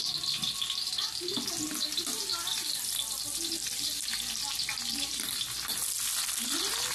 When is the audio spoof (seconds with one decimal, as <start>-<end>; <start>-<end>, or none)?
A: 2.3-4.0; 4.7-5.4